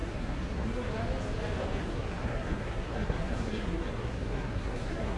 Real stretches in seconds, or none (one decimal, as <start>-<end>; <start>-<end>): 0.9-1.8